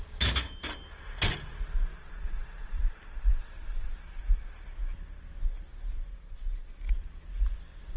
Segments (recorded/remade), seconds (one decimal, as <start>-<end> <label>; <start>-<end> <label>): 0.0-1.9 recorded; 1.9-2.8 remade; 2.8-3.3 recorded; 3.3-4.2 remade; 4.2-6.1 recorded; 6.1-6.8 remade; 6.8-8.0 recorded